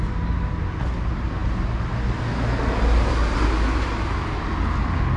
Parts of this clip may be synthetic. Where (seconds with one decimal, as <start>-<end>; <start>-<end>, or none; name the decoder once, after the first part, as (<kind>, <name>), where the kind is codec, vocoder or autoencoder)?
none